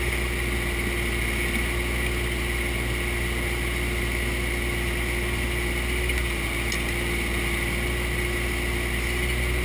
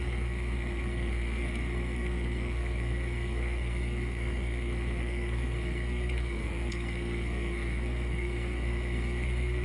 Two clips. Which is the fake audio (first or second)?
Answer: second